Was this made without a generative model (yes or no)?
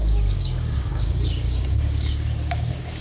no